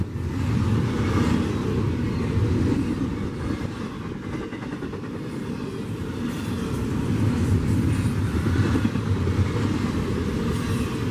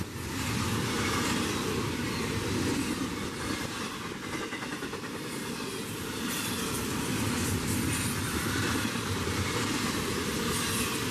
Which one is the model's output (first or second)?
second